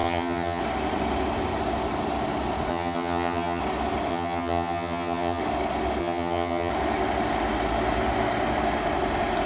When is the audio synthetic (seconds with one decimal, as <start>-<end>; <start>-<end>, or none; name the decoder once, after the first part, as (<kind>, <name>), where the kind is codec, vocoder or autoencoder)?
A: 0.0-0.6 (vocoder, HiFi-GAN); 2.7-3.6; 4.1-5.4; 6.0-6.7